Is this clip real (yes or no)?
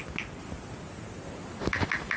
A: yes